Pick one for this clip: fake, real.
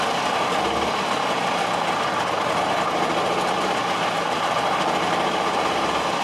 real